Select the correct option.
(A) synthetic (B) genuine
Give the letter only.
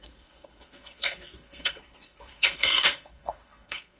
A